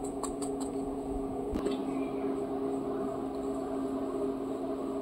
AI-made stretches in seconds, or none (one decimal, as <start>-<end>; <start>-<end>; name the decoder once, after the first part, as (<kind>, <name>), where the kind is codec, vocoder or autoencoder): 0.0-1.8 (vocoder, Vocos)